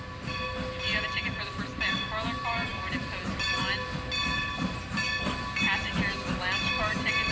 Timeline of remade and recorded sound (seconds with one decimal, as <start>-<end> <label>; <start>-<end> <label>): 0.0-0.9 recorded; 0.9-1.6 remade; 1.6-7.3 recorded